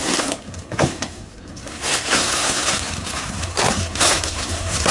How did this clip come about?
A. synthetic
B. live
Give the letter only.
A